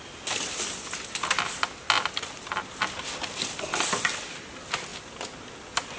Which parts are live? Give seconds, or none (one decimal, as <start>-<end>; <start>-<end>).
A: 0.0-6.0